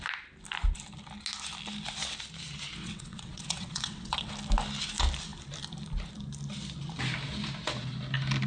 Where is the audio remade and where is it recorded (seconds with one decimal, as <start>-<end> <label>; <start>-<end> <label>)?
0.0-2.8 recorded; 2.8-4.3 remade; 4.3-8.5 recorded